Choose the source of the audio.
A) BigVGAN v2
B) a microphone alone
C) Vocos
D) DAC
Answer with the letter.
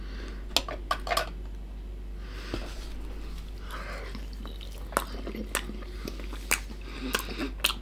B